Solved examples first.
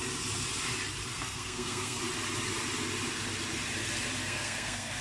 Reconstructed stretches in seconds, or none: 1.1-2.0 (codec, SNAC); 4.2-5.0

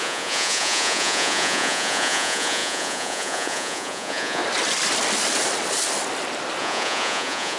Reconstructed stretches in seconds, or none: 0.0-4.4 (vocoder, Vocos); 6.6-7.6

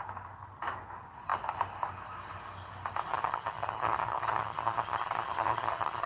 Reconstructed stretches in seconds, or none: 3.1-6.1 (vocoder, HiFi-GAN)